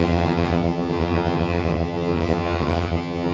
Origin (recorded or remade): remade